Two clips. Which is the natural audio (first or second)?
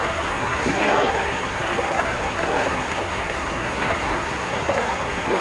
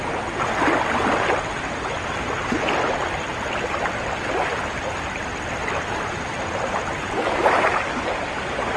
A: second